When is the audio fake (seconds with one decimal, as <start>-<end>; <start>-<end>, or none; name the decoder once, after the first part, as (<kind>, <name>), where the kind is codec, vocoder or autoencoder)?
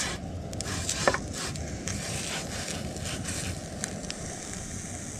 none